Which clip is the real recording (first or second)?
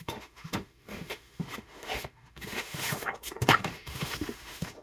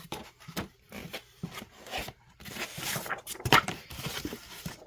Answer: second